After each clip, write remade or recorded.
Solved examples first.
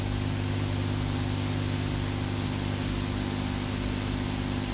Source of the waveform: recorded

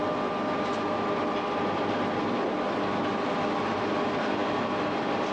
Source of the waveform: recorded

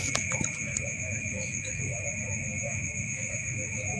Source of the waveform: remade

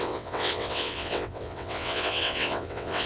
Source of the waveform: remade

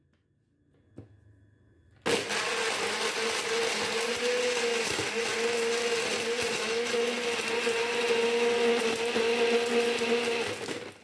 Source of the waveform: recorded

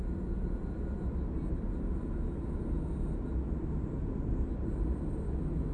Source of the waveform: recorded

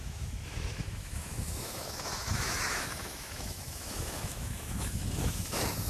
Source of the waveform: remade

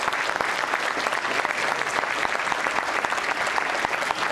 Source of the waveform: recorded